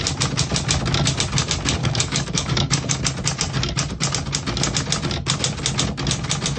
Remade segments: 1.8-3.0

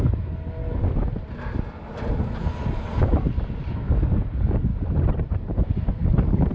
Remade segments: 0.0-0.6; 3.7-4.7; 5.9-6.5

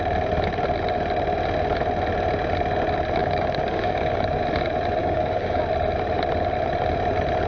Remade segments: 3.2-4.4; 5.0-5.6